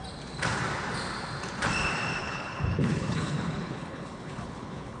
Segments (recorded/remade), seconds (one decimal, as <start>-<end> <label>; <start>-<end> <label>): 0.0-2.2 recorded; 2.2-5.0 remade